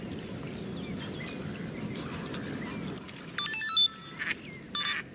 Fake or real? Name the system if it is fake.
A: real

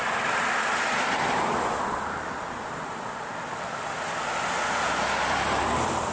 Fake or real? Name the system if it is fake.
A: real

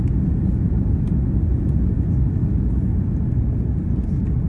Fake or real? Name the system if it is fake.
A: real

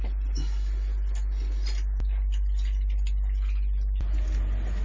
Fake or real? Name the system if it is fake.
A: real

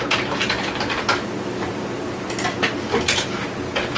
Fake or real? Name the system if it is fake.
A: real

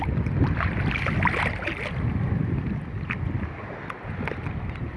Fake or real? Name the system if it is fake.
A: real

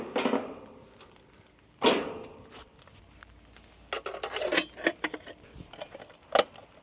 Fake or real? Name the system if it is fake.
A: real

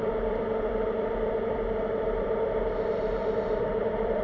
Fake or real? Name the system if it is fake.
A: fake, vocoder, BigVGAN v2